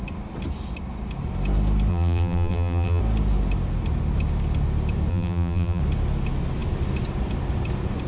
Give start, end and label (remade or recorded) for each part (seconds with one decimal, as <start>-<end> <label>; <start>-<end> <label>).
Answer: 0.0-1.9 recorded; 1.9-3.0 remade; 3.0-5.1 recorded; 5.1-5.8 remade; 5.8-8.1 recorded